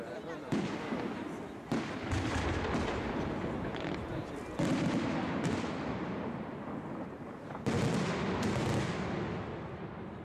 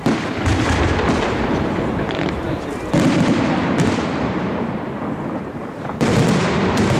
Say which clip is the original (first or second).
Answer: first